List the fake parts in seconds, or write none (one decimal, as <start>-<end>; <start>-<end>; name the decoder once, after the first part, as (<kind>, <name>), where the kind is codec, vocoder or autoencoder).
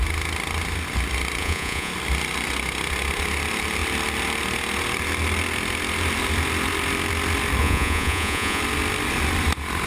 1.4-1.9 (vocoder, Vocos); 7.6-8.6